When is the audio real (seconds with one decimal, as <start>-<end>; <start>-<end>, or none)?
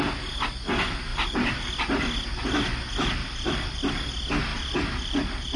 0.0-1.1; 1.7-3.2; 3.8-4.5